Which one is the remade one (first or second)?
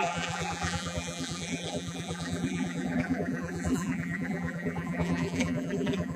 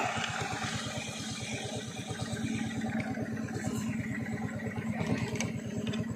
first